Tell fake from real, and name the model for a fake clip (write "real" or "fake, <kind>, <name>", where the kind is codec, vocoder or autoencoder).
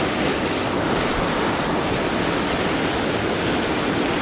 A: real